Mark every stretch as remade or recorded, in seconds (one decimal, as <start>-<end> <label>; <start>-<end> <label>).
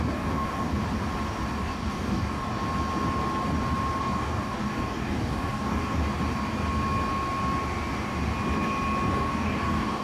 0.0-0.8 remade; 0.8-1.6 recorded; 1.6-2.6 remade; 2.6-4.0 recorded; 4.0-6.0 remade; 6.0-9.1 recorded; 9.1-10.0 remade